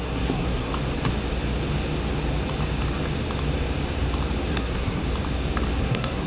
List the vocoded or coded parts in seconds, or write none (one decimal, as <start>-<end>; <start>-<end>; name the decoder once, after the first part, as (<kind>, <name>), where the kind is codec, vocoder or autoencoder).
0.0-0.7 (codec, SNAC); 4.5-5.0; 5.8-6.3